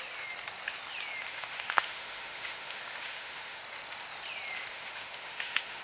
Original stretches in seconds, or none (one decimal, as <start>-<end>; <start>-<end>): 0.0-1.3; 3.6-4.7